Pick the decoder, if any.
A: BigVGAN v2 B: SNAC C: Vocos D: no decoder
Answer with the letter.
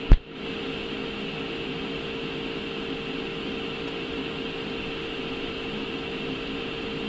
D